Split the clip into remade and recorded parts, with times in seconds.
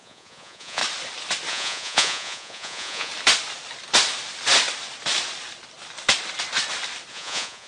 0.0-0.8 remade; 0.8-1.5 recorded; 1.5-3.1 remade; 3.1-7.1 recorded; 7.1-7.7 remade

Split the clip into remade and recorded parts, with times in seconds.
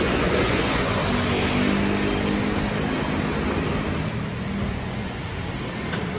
0.0-1.0 remade; 1.0-4.7 recorded; 4.7-5.2 remade; 5.2-6.2 recorded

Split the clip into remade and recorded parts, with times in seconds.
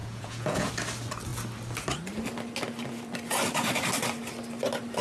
0.0-0.7 remade; 0.7-5.0 recorded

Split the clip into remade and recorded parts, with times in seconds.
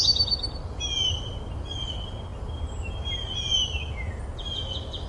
0.0-5.1 recorded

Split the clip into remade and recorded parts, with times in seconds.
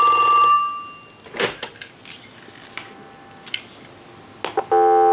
0.0-5.1 recorded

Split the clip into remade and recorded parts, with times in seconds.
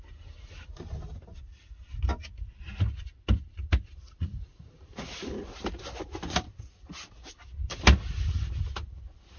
0.0-9.4 recorded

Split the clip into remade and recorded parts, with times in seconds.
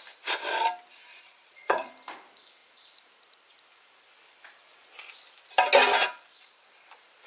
0.0-1.1 recorded; 1.1-1.9 remade; 1.9-7.3 recorded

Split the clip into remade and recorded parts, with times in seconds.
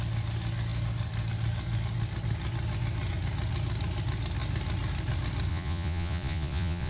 0.0-5.5 recorded; 5.5-6.9 remade